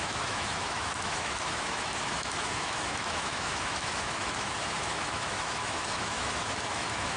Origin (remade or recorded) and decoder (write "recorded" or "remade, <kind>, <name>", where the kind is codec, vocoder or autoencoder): remade, autoencoder, DAC-VAE